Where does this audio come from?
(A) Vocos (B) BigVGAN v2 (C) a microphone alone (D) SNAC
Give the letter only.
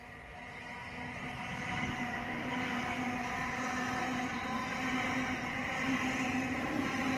C